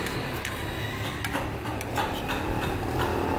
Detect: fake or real real